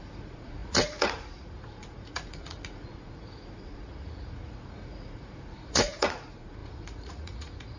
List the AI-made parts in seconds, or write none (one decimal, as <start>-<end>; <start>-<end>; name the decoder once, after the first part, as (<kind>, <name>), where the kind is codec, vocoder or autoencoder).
0.0-7.8 (vocoder, Vocos)